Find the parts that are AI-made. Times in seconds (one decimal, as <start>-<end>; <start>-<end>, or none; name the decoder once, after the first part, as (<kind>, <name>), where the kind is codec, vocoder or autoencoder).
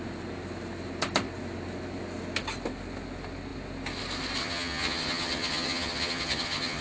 4.4-6.8 (vocoder, HiFi-GAN)